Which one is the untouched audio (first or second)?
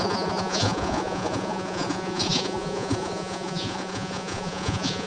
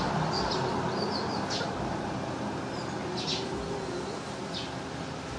second